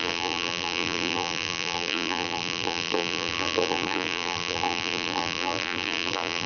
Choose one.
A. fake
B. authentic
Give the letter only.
A